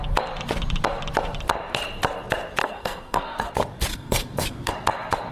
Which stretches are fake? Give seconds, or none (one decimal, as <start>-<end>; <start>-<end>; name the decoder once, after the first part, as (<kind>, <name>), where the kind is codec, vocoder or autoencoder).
2.6-3.5 (codec, SNAC); 3.9-4.7